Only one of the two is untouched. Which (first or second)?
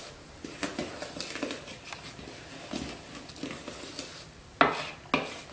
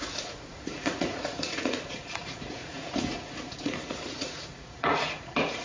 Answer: first